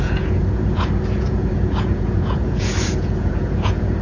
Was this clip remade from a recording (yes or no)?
yes